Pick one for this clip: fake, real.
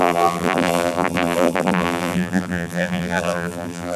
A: fake